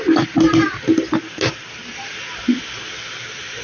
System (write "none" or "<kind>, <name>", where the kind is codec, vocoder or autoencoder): none